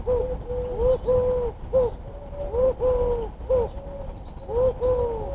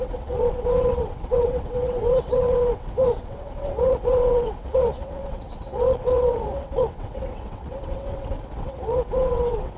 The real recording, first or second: first